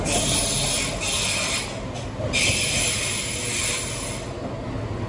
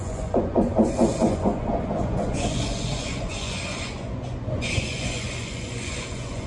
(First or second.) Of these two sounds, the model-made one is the second